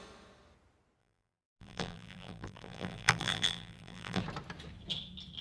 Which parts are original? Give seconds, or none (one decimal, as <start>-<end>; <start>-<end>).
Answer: 0.0-1.0; 4.2-5.4